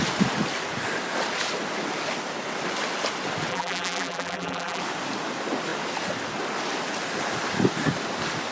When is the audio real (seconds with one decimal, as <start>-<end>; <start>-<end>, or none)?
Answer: 0.0-3.5; 4.8-8.5